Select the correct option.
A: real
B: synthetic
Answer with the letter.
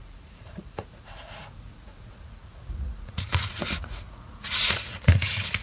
B